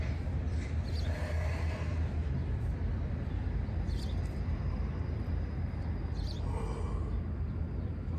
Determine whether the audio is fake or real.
real